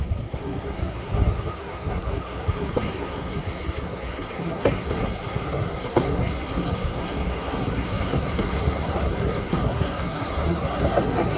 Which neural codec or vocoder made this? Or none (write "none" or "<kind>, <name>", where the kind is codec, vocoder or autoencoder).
codec, SNAC